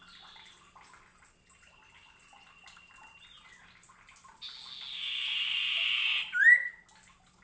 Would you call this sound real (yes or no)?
yes